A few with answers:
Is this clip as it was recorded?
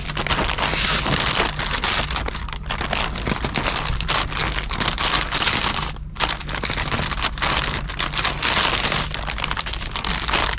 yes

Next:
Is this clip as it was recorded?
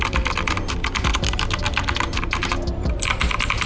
yes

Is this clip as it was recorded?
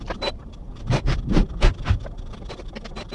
no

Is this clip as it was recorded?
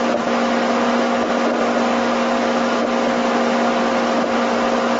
yes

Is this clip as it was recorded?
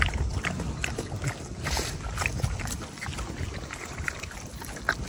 yes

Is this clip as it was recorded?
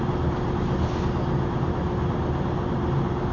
yes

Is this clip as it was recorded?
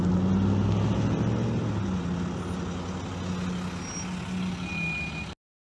yes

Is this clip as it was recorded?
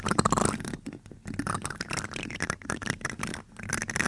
yes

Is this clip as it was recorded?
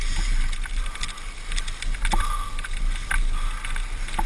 yes